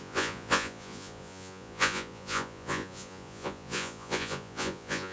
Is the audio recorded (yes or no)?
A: no